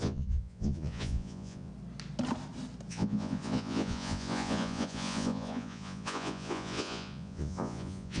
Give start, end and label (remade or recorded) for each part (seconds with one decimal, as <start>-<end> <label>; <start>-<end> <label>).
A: 0.0-1.7 remade; 1.7-2.9 recorded; 2.9-8.2 remade